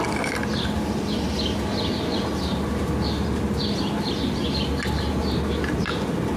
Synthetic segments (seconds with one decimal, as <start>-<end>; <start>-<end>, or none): none